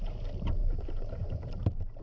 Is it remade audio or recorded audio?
remade